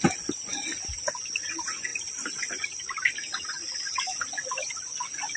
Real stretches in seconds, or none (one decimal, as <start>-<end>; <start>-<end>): 0.0-5.4

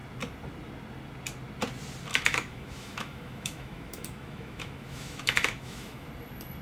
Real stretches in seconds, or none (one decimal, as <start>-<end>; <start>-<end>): 0.0-2.1; 6.1-6.6

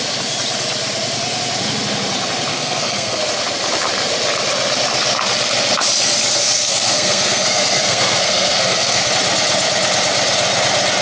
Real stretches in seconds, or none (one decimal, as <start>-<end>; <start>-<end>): 0.0-2.5; 3.2-6.4; 9.1-11.0